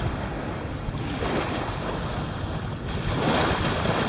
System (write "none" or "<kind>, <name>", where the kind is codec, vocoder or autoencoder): none